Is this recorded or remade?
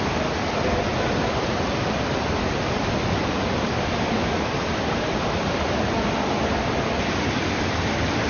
remade